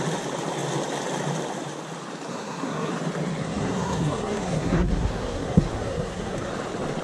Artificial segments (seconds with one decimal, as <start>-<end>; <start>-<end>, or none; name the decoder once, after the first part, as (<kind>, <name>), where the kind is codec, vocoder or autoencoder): 2.3-2.9 (codec, SNAC); 3.4-6.5